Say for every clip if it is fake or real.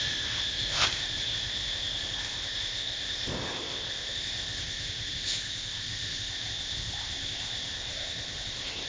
fake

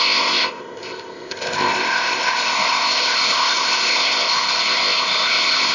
fake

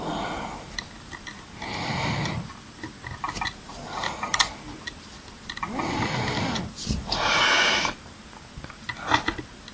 real